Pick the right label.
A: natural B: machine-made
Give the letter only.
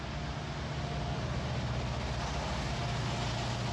A